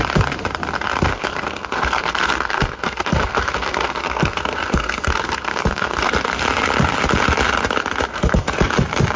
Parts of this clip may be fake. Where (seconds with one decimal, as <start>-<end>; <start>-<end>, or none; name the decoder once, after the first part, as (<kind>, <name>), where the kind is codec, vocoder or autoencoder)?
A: 1.1-6.1 (codec, SNAC); 8.1-8.6